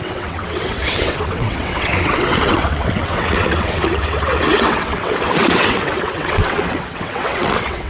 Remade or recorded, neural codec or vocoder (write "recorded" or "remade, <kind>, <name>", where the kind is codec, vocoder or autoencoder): remade, vocoder, WaveNeXt